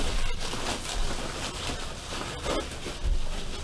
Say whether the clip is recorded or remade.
recorded